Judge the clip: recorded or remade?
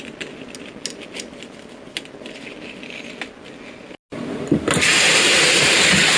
recorded